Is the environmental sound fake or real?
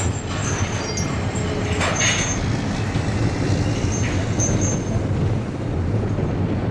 real